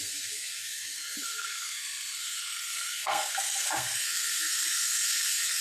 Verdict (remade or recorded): remade